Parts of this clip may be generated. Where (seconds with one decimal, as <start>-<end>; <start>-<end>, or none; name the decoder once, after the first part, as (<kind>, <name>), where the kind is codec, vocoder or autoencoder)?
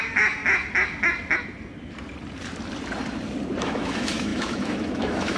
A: 0.0-0.4 (autoencoder, DAC-VAE); 3.6-5.4